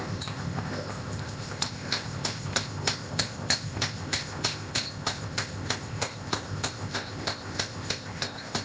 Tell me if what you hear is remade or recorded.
remade